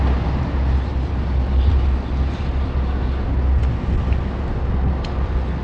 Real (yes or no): yes